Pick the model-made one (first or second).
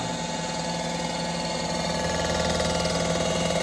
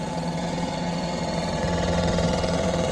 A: second